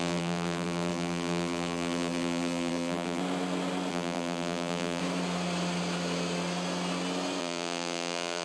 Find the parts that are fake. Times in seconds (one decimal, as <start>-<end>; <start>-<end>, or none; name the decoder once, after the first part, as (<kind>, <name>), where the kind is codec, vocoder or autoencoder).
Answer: 0.0-3.2 (vocoder, BigVGAN v2); 3.9-5.0; 7.4-8.4